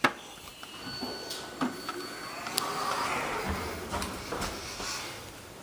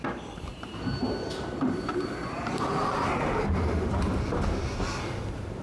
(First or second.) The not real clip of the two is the second